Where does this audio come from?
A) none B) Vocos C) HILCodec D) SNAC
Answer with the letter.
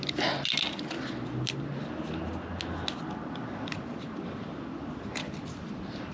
A